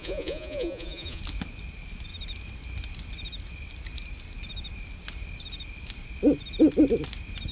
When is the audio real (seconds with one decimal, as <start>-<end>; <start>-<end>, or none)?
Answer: 1.2-7.5